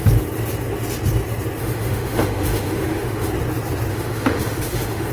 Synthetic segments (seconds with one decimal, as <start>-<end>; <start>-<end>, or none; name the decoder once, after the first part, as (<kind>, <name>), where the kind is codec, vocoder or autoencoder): 1.6-3.3 (autoencoder, DAC-VAE); 3.9-5.1